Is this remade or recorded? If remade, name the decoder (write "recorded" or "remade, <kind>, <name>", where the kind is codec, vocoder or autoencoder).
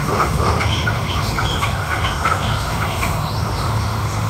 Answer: remade, autoencoder, DAC-VAE